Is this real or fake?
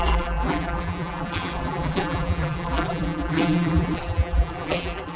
fake